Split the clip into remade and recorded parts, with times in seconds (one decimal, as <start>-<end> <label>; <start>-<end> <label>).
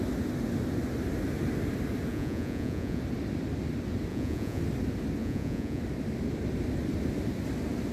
0.0-2.1 recorded; 2.1-3.0 remade; 3.0-4.1 recorded; 4.1-4.6 remade; 4.6-5.2 recorded; 5.2-5.8 remade; 5.8-7.9 recorded